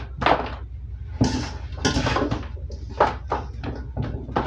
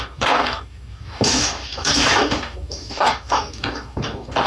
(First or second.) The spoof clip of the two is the second